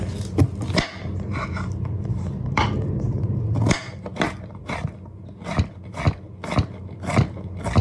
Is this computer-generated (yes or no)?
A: no